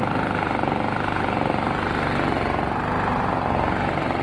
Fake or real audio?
real